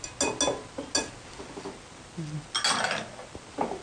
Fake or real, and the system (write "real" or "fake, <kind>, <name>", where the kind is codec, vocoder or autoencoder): real